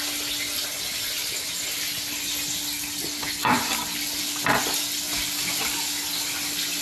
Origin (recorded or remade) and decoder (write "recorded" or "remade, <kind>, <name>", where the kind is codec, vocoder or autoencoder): recorded